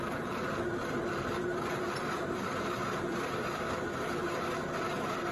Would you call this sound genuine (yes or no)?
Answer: no